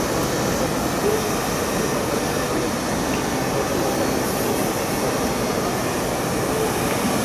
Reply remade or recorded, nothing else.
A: recorded